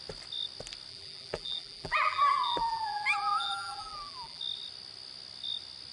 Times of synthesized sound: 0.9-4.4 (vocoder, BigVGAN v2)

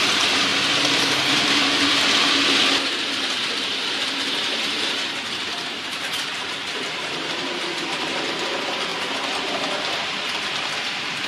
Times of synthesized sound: 0.0-0.5 (vocoder, BigVGAN v2); 4.3-8.9; 9.5-11.3

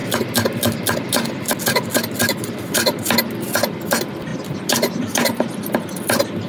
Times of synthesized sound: 4.3-5.3 (vocoder, BigVGAN v2)